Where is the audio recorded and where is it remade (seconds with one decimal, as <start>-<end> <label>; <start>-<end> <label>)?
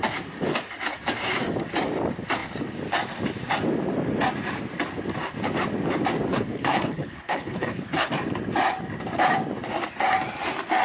0.0-6.3 recorded; 6.3-8.1 remade; 8.1-10.8 recorded